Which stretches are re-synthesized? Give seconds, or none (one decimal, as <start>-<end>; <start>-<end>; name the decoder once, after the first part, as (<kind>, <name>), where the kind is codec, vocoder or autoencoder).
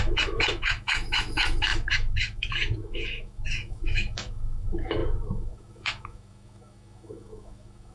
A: 0.0-7.9 (autoencoder, DAC-VAE)